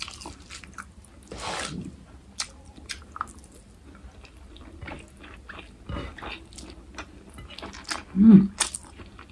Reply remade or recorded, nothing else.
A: recorded